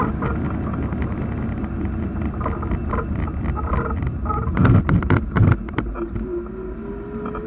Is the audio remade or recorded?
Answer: recorded